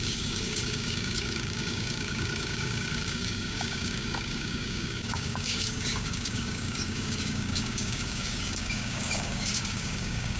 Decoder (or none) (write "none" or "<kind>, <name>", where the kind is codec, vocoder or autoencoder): codec, DAC